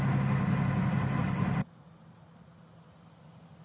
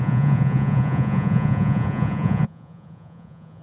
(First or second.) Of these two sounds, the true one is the first